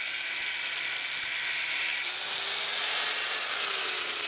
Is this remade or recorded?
recorded